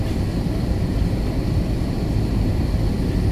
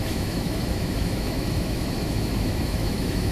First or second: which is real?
first